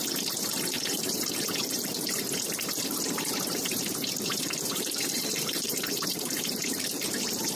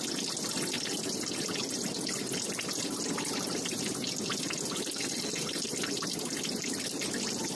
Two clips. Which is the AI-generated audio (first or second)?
first